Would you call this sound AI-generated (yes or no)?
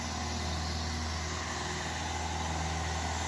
no